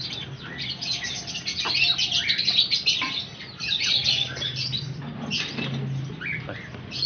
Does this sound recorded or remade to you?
recorded